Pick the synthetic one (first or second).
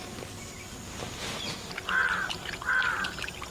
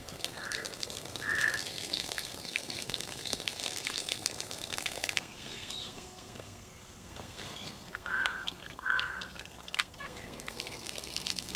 second